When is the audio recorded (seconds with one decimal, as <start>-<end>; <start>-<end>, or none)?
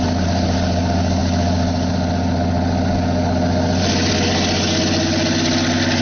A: 0.0-6.0